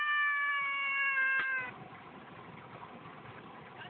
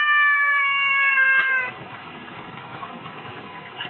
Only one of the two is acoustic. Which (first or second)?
first